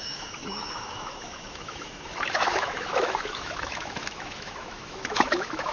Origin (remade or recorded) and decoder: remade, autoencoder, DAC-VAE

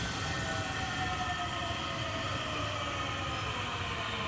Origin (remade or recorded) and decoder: recorded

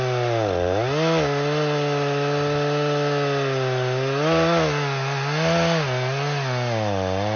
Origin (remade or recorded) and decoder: recorded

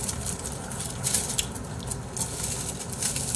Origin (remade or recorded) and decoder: recorded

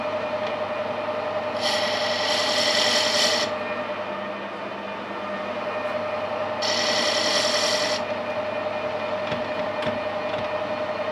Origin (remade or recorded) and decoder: recorded